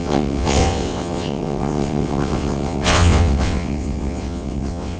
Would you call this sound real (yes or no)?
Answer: no